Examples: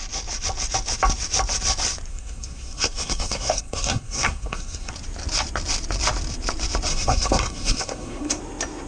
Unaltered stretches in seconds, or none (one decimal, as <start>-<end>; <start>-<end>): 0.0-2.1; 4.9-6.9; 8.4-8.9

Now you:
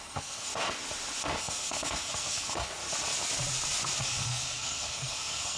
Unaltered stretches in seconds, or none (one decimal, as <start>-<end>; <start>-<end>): 0.5-1.4; 2.7-4.0

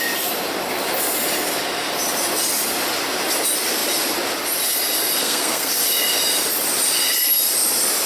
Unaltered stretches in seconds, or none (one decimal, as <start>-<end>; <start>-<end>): 0.0-5.2; 5.7-8.1

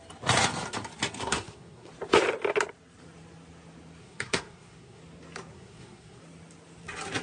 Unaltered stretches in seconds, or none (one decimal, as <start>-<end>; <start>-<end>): 0.0-1.2; 1.9-4.0; 5.0-5.5; 6.2-7.2